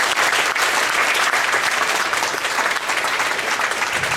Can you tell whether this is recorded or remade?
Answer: remade